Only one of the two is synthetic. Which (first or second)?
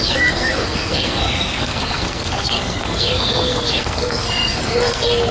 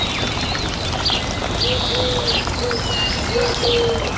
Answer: first